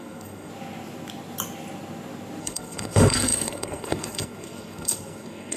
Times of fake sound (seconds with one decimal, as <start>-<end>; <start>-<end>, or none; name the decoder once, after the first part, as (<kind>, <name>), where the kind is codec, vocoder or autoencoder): 0.0-0.5 (codec, SNAC); 2.4-5.6